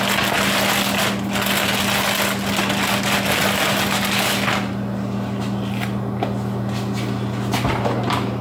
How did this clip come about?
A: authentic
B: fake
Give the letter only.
A